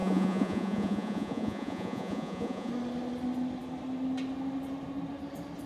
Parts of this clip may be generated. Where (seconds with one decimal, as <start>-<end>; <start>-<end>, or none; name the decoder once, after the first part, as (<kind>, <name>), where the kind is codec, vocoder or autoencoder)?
0.0-2.7 (vocoder, Vocos)

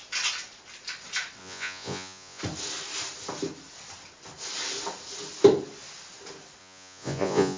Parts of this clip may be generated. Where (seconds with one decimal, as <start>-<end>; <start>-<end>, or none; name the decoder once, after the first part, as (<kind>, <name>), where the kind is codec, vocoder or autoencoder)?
1.4-2.4 (vocoder, Vocos); 6.6-7.6

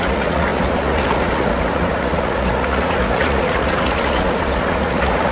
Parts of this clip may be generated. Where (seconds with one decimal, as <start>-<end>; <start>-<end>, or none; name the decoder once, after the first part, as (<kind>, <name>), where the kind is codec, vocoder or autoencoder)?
0.0-5.3 (vocoder, Vocos)

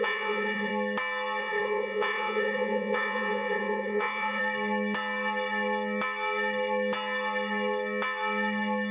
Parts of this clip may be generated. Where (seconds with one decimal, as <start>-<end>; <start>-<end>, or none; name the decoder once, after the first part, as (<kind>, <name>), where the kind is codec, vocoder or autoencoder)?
0.0-0.7 (vocoder, Vocos); 1.4-4.4

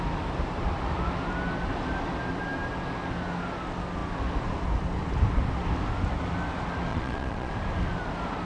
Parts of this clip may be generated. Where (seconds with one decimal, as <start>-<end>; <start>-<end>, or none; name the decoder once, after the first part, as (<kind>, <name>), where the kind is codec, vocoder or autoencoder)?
6.9-7.5 (vocoder, Vocos)

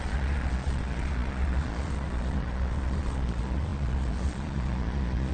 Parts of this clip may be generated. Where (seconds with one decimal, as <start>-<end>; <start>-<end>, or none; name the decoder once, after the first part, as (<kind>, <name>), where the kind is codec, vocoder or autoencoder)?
0.0-5.3 (vocoder, Vocos)

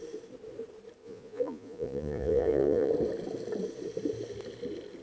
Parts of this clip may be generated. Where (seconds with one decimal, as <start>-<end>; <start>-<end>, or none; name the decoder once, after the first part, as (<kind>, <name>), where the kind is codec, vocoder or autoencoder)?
1.0-2.9 (vocoder, Vocos)